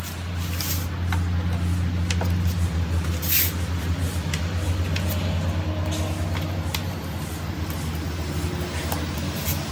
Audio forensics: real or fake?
real